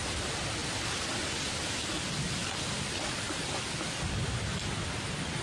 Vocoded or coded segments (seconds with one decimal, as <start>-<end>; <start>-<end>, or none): none